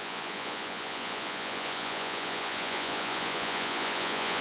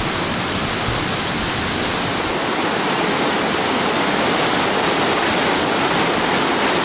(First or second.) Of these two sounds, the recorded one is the second